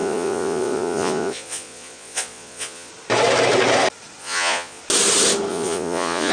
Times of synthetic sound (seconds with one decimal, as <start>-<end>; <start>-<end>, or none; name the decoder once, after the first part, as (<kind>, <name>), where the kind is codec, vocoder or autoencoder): 0.0-2.9 (vocoder, Vocos); 4.2-4.8; 5.5-6.3